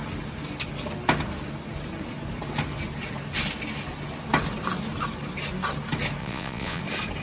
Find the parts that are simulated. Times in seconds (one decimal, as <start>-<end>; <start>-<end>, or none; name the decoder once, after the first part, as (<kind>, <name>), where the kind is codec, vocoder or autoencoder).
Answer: 6.2-6.8 (vocoder, Vocos)